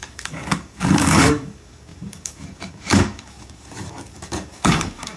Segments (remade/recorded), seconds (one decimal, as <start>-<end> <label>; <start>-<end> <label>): 0.0-5.2 remade